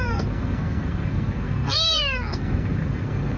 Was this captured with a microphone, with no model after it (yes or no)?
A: no